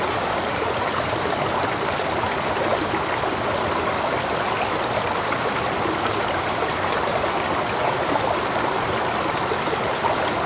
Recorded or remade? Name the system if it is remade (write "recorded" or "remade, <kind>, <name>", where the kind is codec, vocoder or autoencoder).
recorded